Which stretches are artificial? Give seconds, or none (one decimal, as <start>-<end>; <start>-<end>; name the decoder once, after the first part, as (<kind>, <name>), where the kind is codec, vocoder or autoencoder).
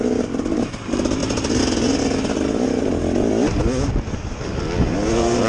none